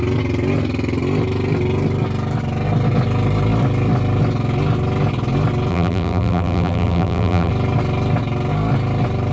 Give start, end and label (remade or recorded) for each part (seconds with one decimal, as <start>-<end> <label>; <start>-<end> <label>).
0.0-5.7 recorded; 5.7-7.5 remade; 7.5-9.3 recorded